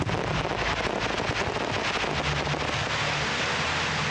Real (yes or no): yes